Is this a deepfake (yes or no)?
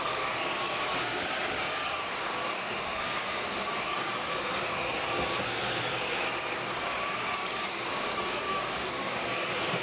yes